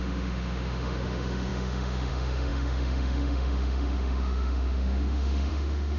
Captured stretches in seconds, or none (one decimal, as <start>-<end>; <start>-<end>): none